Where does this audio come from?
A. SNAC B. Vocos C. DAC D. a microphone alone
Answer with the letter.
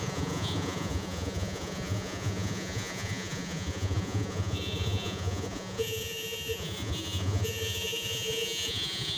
B